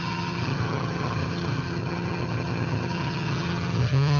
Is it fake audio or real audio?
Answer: fake